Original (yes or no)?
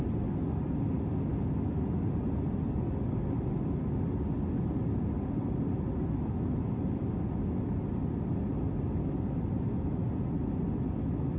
yes